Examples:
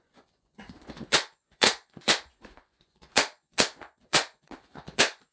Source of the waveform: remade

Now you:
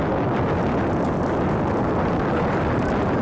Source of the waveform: recorded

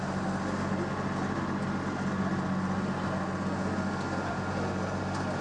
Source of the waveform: recorded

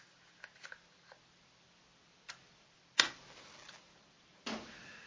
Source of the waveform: recorded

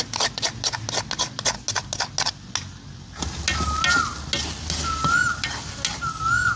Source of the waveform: recorded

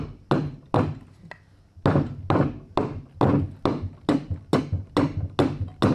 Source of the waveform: recorded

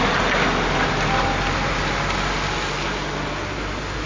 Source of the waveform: recorded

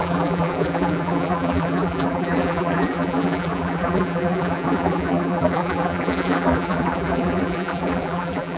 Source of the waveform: remade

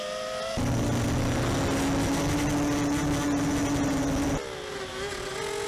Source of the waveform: recorded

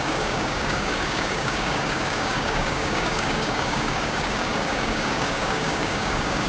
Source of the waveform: remade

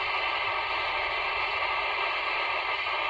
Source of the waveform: recorded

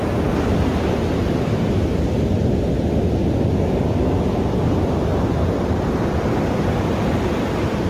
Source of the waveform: recorded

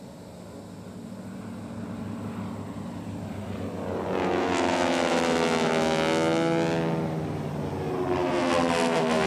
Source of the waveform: recorded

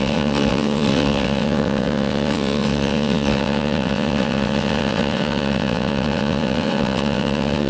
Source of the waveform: remade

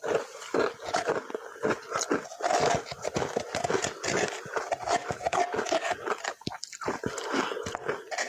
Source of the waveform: recorded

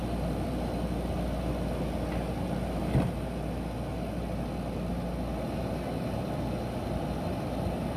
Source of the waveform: recorded